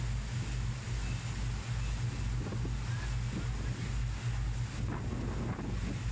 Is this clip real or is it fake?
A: real